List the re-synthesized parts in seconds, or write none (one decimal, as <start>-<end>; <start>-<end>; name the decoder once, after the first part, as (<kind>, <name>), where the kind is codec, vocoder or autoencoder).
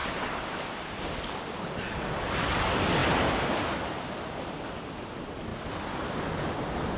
none